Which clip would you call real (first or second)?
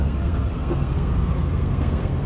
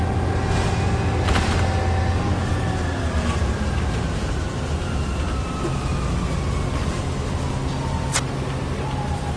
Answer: second